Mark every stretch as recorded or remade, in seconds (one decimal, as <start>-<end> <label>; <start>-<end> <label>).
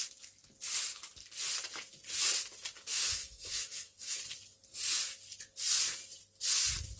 0.0-2.9 recorded; 2.9-4.2 remade; 4.2-7.0 recorded